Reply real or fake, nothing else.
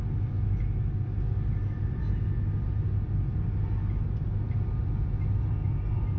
real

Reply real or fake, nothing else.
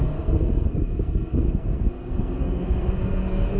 fake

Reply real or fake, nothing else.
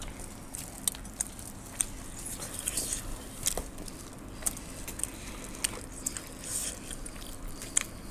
real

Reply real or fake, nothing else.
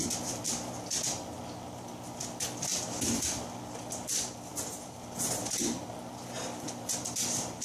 real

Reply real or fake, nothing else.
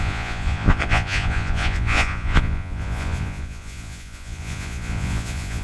fake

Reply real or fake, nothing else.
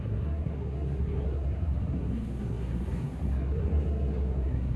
fake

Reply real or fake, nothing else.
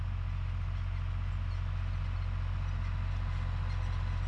real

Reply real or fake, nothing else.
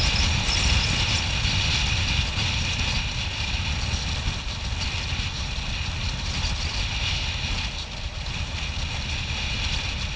real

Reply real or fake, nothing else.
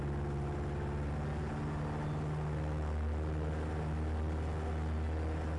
real